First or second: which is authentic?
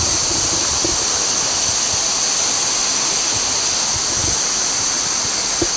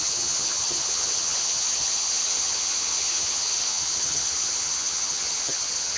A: first